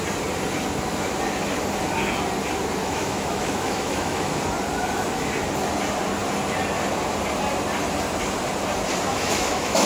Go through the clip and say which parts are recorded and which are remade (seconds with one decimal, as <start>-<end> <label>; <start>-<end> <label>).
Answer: 0.0-2.8 recorded; 2.8-4.4 remade; 4.4-9.1 recorded; 9.1-9.9 remade